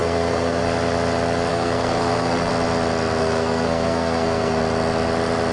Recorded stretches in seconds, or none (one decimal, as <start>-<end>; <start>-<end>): 0.6-1.5; 2.5-3.2; 4.6-5.5